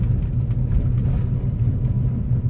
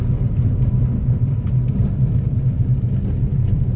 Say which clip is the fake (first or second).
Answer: second